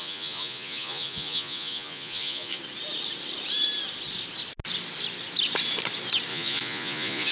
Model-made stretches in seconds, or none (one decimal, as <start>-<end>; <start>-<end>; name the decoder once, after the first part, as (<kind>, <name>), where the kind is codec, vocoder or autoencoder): 0.0-2.6 (vocoder, Vocos); 6.3-7.3